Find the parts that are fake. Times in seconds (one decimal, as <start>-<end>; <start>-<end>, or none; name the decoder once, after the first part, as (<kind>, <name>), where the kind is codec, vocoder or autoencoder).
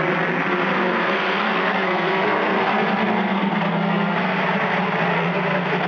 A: 0.9-4.4 (codec, SNAC); 5.1-5.9